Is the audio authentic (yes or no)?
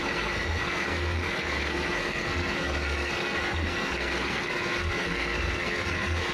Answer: no